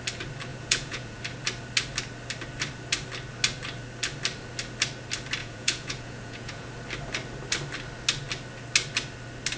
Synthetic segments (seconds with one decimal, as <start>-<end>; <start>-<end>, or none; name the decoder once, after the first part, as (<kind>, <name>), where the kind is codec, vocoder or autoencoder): 0.5-1.2 (vocoder, Vocos); 5.4-6.7